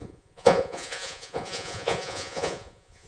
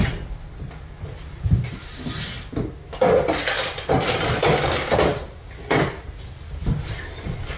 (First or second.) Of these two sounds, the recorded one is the second